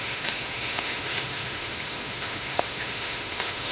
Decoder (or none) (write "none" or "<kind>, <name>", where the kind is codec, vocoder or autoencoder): autoencoder, DAC-VAE